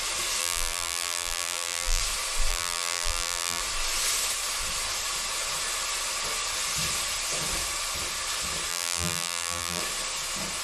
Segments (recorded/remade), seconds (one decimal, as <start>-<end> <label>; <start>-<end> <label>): 0.0-0.4 recorded; 0.4-2.0 remade; 2.0-2.5 recorded; 2.5-3.6 remade; 3.6-8.7 recorded; 8.7-9.8 remade; 9.8-10.6 recorded